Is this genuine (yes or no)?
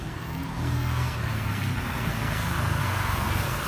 no